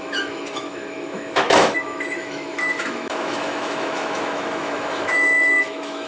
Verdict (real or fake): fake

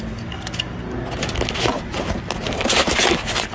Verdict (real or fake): real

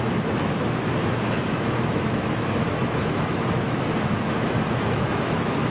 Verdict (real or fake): fake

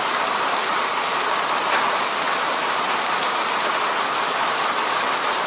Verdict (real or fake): real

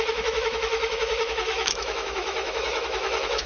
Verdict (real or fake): fake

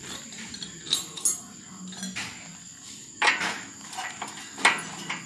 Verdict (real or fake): real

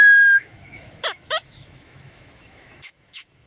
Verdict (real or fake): fake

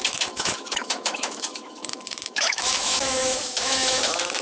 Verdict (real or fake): fake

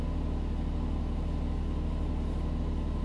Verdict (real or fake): real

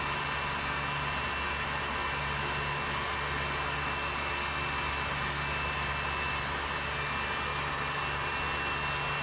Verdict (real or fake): real